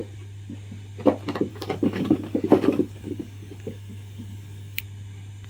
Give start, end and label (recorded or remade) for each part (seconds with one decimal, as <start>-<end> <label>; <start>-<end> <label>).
0.0-1.5 recorded; 1.5-4.8 remade; 4.8-5.5 recorded